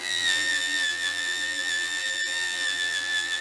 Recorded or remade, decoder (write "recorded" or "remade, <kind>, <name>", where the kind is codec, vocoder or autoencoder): remade, vocoder, BigVGAN v2